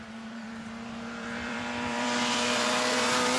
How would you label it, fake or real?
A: fake